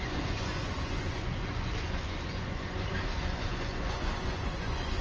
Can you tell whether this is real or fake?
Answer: fake